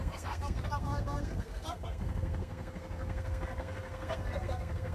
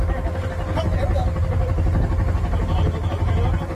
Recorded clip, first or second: second